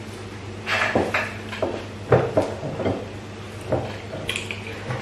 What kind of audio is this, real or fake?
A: real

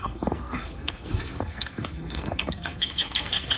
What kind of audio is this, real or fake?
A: fake